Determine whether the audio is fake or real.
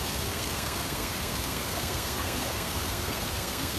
fake